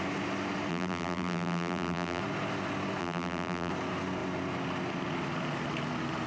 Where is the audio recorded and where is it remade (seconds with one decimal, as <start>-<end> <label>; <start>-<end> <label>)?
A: 0.0-0.7 recorded; 0.7-2.2 remade; 2.2-3.0 recorded; 3.0-3.7 remade; 3.7-6.3 recorded